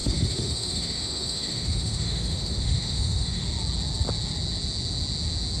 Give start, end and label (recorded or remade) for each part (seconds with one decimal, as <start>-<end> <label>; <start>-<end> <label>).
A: 0.0-3.4 remade; 3.4-5.6 recorded